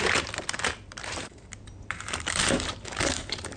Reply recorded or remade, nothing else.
remade